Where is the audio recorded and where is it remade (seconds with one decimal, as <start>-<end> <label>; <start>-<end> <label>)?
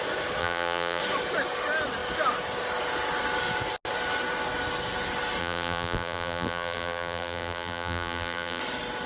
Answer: 0.0-0.4 recorded; 0.4-1.0 remade; 1.0-5.4 recorded; 5.4-8.6 remade; 8.6-9.1 recorded